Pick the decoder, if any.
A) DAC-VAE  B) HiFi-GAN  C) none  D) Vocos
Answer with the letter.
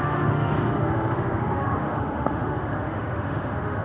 A